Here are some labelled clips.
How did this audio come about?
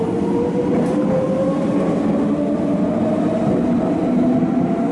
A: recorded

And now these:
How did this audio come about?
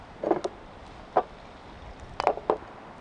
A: recorded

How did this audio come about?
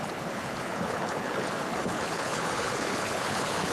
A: remade